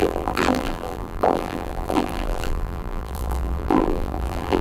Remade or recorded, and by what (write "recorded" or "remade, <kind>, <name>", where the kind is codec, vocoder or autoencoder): remade, vocoder, BigVGAN v2